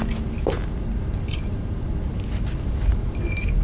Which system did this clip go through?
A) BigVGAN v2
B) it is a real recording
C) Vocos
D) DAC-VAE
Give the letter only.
B